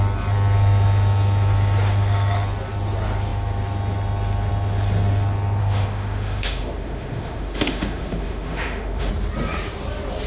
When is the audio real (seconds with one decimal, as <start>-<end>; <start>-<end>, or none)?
0.0-5.6; 9.1-10.3